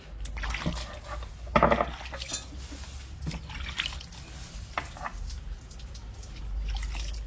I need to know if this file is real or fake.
real